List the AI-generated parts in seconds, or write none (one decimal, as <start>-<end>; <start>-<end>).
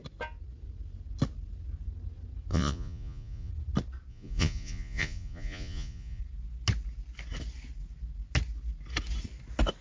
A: 2.5-3.5; 4.1-6.2